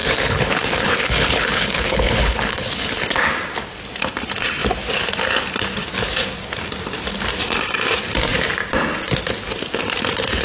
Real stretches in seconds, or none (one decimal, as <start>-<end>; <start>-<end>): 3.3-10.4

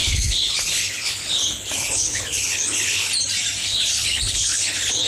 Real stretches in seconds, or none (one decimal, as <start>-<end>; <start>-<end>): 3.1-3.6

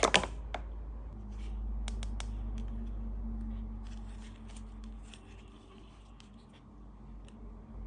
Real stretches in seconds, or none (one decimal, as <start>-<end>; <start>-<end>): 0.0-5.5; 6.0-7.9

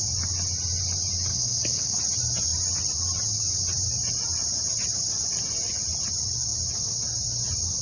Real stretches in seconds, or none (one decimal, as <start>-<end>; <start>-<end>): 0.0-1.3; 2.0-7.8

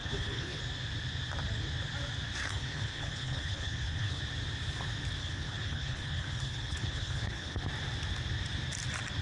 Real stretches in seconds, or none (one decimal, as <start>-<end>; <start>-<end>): 0.6-2.5; 4.2-5.2; 7.6-9.2

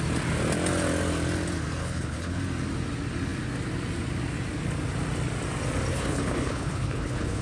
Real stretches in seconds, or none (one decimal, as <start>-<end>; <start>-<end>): 0.0-1.8; 2.4-5.9

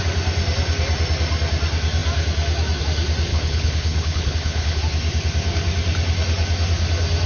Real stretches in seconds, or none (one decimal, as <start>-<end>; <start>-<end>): 0.0-3.3; 4.8-7.3